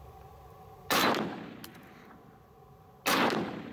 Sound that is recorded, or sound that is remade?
recorded